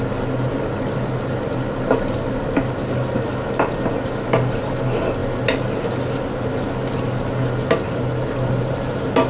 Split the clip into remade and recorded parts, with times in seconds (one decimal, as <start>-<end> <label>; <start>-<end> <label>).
0.0-9.3 recorded